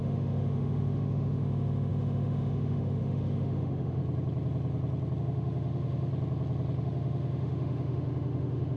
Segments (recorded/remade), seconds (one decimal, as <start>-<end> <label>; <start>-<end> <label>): 0.0-4.0 remade; 4.0-5.2 recorded; 5.2-6.1 remade; 6.1-6.8 recorded; 6.8-8.8 remade